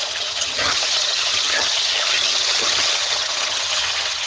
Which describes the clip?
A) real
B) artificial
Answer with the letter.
B